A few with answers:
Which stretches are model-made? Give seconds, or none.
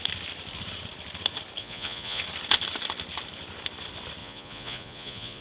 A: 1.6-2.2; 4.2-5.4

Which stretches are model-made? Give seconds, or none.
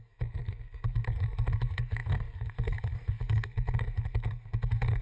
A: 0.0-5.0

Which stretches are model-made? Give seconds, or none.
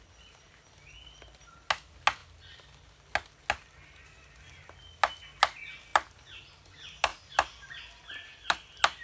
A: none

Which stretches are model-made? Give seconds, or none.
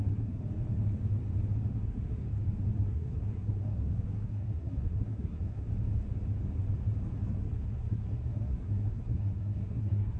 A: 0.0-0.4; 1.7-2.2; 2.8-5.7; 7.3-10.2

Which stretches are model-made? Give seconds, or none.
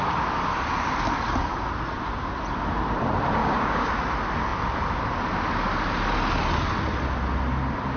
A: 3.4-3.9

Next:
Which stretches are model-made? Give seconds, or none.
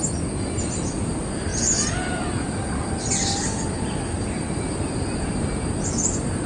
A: none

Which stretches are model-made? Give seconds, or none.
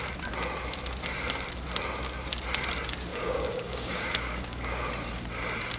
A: 3.1-4.9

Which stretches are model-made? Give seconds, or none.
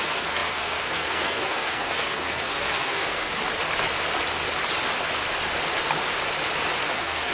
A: 0.0-3.3; 6.8-7.3